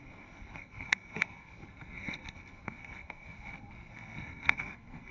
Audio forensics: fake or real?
fake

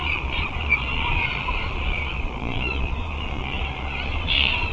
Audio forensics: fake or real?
fake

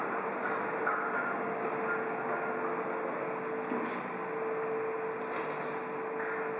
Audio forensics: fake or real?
real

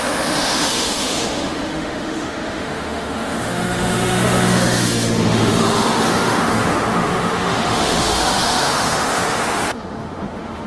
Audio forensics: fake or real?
fake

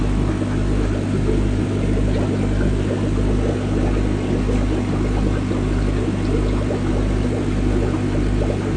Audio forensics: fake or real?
real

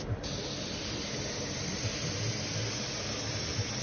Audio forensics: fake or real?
real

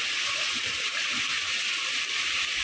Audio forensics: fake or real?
real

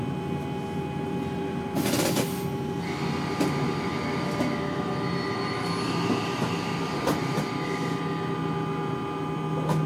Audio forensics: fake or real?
real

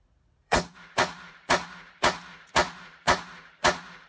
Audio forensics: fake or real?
fake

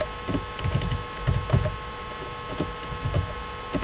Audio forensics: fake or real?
real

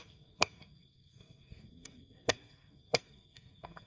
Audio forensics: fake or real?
fake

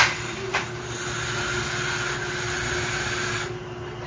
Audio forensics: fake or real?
real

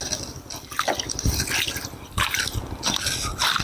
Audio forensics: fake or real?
real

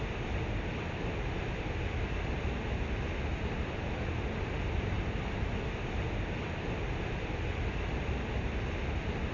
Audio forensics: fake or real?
real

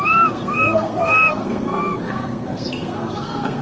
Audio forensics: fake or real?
fake